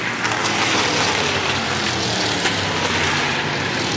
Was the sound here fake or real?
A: real